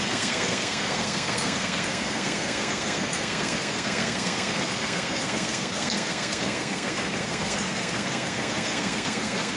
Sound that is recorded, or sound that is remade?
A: remade